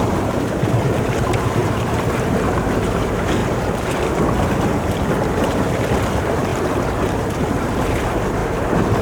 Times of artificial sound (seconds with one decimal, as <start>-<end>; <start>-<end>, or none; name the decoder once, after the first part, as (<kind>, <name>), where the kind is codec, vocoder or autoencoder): 0.0-9.0 (vocoder, BigVGAN v2)